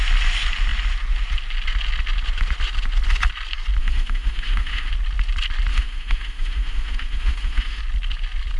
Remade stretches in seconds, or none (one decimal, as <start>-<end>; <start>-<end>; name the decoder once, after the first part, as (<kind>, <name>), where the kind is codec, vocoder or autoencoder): 3.8-4.9 (autoencoder, DAC-VAE); 5.7-7.8